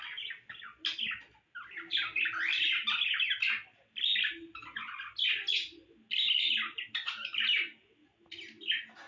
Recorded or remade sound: recorded